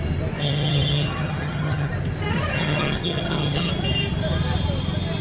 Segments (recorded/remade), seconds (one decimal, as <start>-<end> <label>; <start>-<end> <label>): 0.0-0.4 recorded; 0.4-1.9 remade; 1.9-2.5 recorded; 2.5-3.7 remade; 3.7-5.2 recorded